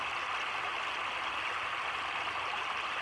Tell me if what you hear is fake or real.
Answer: real